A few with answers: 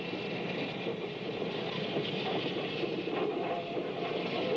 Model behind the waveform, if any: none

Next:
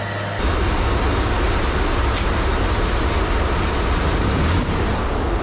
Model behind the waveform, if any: none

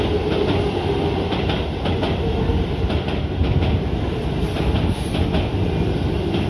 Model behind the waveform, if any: none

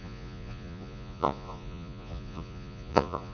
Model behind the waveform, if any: vocoder, Vocos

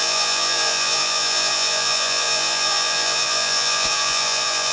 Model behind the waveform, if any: vocoder, Vocos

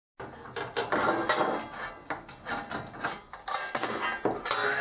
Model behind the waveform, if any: none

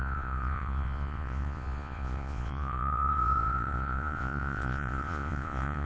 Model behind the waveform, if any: vocoder, Vocos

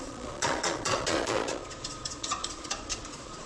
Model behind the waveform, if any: vocoder, Vocos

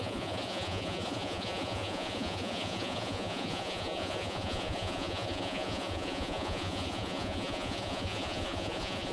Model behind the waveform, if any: vocoder, Vocos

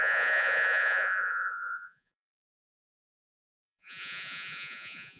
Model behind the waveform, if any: vocoder, Vocos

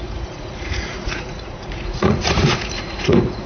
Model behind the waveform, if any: vocoder, Vocos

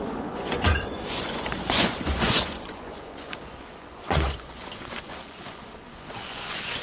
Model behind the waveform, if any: vocoder, Vocos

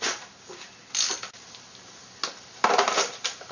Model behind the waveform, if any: none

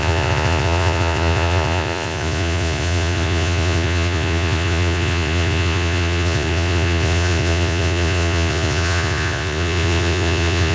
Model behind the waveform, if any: vocoder, Vocos